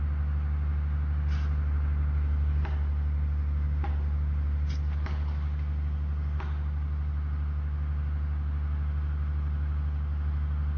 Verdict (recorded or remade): recorded